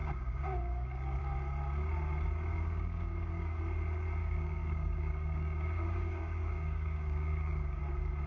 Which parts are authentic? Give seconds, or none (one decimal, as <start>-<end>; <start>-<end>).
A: 1.2-2.5; 3.6-4.2; 7.8-8.3